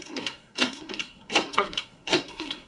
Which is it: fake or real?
fake